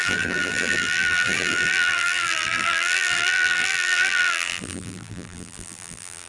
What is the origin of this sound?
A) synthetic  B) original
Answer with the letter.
A